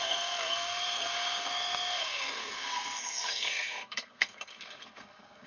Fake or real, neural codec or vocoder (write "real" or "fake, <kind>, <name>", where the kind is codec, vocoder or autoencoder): fake, codec, SNAC